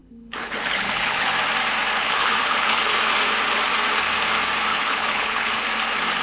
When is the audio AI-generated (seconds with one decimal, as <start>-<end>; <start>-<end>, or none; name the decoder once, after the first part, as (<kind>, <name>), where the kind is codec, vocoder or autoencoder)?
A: 0.0-1.3 (codec, HILCodec); 2.0-3.0; 4.7-5.6